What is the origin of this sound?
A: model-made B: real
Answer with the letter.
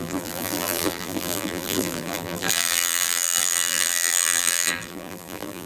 A